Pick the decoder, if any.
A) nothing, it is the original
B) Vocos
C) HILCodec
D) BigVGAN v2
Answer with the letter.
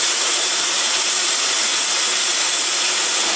B